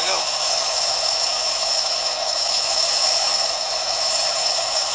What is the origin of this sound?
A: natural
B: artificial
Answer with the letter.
B